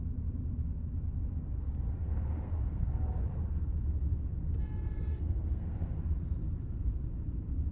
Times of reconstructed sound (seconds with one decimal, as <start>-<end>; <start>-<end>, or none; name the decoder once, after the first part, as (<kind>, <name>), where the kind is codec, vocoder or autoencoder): 2.0-3.0 (codec, SNAC); 5.1-6.0